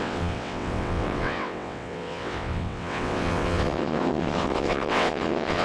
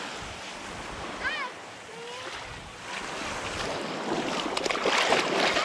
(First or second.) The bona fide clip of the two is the second